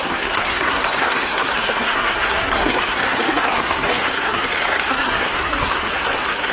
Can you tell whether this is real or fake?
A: fake